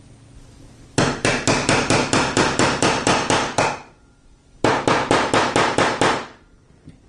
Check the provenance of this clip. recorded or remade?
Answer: recorded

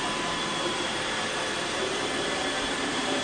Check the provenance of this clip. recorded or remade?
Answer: remade